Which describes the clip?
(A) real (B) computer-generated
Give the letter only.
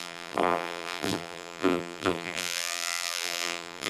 B